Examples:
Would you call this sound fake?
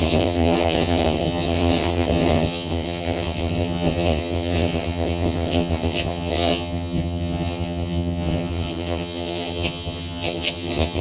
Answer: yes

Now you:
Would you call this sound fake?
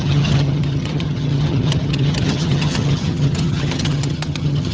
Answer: yes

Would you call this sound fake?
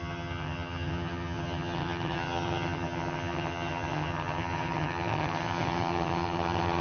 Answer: yes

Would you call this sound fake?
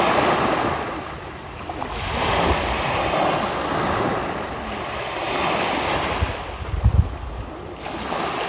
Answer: no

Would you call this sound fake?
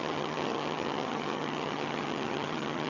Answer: yes